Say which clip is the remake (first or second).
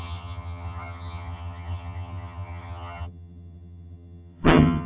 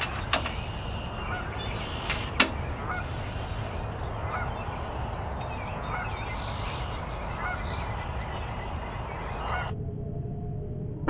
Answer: first